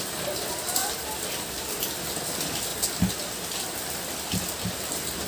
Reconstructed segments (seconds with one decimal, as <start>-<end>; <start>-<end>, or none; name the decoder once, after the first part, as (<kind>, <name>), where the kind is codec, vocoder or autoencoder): 0.8-1.7 (vocoder, BigVGAN v2)